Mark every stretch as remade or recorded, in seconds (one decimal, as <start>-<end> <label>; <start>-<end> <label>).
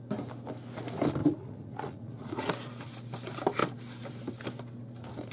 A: 0.0-1.2 recorded; 1.2-2.5 remade; 2.5-5.3 recorded